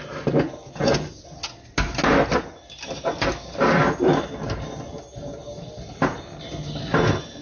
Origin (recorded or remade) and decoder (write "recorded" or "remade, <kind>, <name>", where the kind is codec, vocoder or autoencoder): recorded